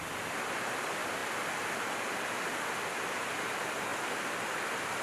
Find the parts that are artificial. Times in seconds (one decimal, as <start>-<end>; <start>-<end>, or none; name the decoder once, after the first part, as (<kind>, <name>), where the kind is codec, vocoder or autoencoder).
none